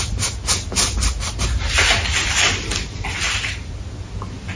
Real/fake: real